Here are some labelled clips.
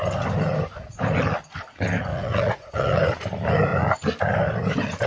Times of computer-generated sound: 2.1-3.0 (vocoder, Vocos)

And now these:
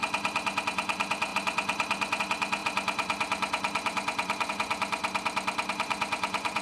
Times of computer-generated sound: 0.0-5.0 (vocoder, Vocos); 5.7-6.6

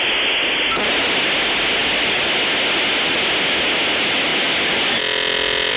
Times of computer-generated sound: none

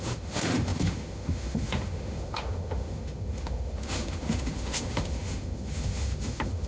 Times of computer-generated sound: 0.0-6.7 (autoencoder, DAC-VAE)

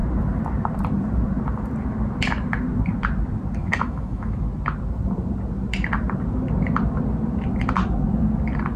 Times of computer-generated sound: 3.6-4.4 (autoencoder, DAC-VAE)

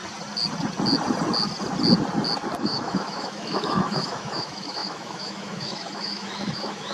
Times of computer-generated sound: 2.6-6.9 (autoencoder, DAC-VAE)